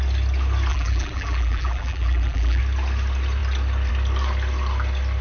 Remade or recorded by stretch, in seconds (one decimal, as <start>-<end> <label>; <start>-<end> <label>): 0.0-0.7 recorded; 0.7-2.6 remade; 2.6-5.2 recorded